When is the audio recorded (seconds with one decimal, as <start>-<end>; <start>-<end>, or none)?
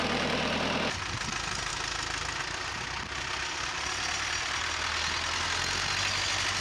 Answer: 0.0-6.6